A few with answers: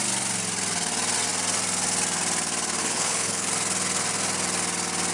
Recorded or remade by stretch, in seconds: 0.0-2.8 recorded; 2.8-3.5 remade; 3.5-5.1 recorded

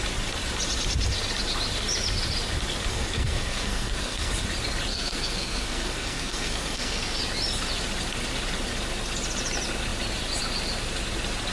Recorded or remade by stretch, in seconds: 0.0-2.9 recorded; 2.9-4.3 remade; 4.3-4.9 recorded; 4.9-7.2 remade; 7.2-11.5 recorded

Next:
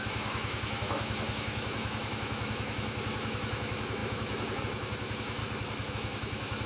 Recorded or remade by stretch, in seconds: 0.0-5.4 remade; 5.4-5.9 recorded; 5.9-6.7 remade

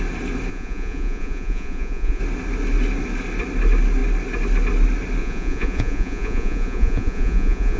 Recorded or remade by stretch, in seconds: 0.0-0.5 recorded; 0.5-2.2 remade; 2.2-5.2 recorded; 5.2-7.8 remade

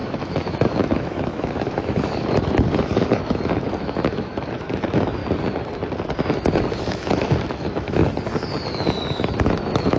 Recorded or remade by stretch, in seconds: 0.0-5.2 remade; 5.2-6.8 recorded; 6.8-8.0 remade; 8.0-8.7 recorded; 8.7-10.0 remade

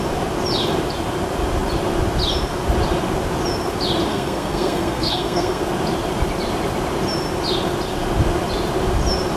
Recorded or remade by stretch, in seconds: 0.0-4.1 recorded; 4.1-5.6 remade; 5.6-9.4 recorded

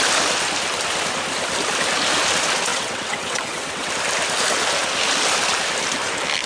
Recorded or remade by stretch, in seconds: 0.0-2.7 recorded; 2.7-3.9 remade; 3.9-6.5 recorded